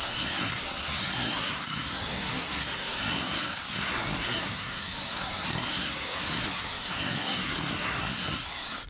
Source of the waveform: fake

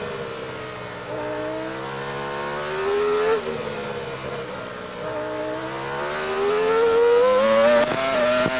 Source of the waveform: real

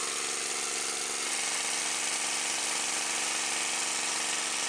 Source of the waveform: real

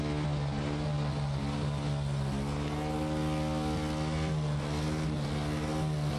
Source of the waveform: real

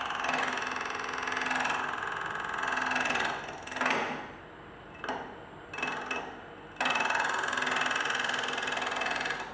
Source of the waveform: real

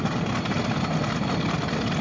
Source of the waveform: real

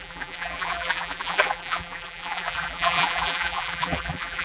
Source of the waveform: fake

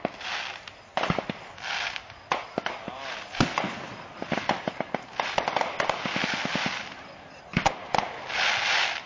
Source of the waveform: real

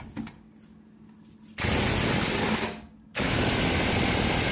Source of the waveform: real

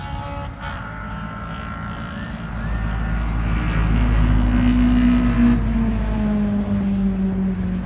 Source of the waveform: real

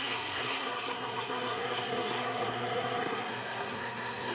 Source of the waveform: fake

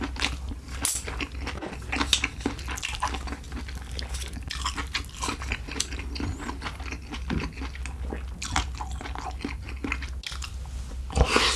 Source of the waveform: real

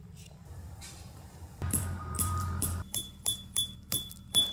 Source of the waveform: fake